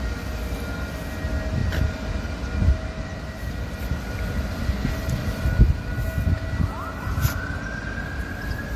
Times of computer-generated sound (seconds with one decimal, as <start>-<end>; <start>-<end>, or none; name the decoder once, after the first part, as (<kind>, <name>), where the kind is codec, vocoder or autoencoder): none